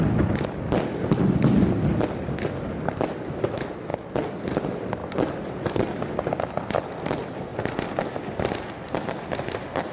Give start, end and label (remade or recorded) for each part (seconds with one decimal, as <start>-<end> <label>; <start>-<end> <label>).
0.0-9.9 recorded